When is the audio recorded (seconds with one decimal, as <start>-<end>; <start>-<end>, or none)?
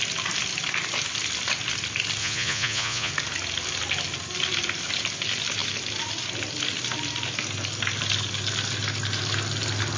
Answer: 0.0-2.2; 3.1-10.0